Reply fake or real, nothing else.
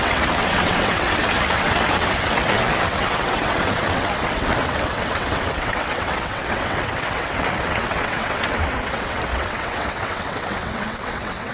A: fake